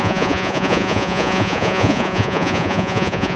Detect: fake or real fake